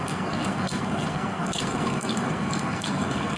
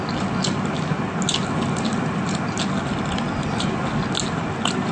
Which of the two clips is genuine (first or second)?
second